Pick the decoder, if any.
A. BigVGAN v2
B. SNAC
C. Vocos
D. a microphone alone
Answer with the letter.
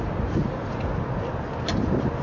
D